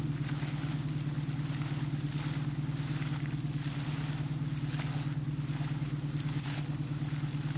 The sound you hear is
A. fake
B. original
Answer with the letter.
B